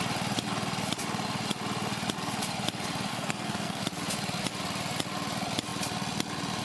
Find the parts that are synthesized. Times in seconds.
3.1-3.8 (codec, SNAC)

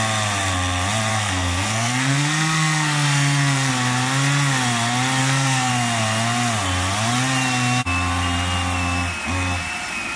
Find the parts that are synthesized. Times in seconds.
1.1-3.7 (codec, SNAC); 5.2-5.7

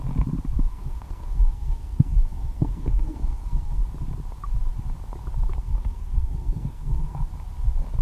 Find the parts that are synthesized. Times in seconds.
0.7-3.8 (codec, SNAC); 5.6-7.2